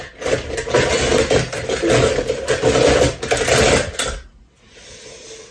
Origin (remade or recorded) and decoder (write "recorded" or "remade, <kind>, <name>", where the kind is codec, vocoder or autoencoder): recorded